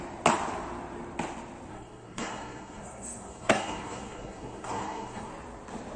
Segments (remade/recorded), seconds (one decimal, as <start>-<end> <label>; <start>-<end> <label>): 0.0-1.7 recorded; 1.7-5.3 remade; 5.3-6.0 recorded